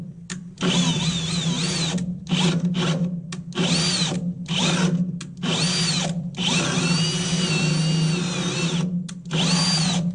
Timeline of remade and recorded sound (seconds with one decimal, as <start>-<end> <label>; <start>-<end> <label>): 0.0-10.1 recorded